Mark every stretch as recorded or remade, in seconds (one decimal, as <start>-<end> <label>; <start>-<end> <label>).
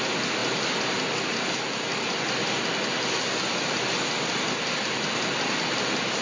0.0-6.2 recorded